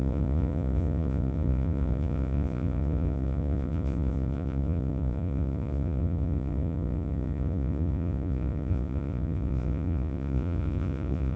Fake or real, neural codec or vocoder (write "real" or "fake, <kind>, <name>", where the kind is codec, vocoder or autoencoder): fake, vocoder, Vocos